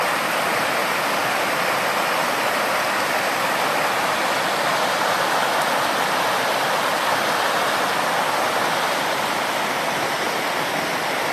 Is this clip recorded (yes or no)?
yes